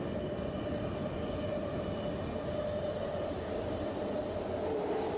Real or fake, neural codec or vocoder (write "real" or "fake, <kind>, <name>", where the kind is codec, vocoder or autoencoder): real